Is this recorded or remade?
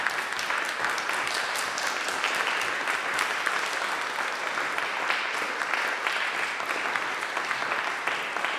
recorded